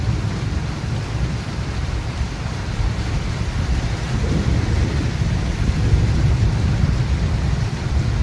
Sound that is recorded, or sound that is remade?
remade